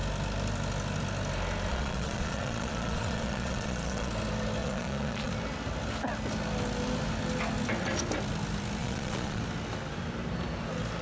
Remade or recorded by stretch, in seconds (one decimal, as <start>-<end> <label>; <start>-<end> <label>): 0.0-1.7 recorded; 1.7-4.1 remade; 4.1-4.6 recorded; 4.6-5.3 remade; 5.3-8.8 recorded; 8.8-9.4 remade; 9.4-11.0 recorded